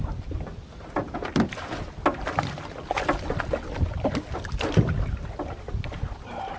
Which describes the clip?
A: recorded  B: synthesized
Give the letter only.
A